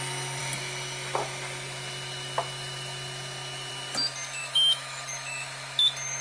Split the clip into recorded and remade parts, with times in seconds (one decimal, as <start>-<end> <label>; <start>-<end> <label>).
0.0-4.4 recorded; 4.4-6.2 remade